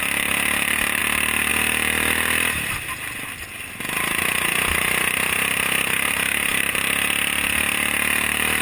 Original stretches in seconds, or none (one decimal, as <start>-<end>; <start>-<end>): 0.0-8.6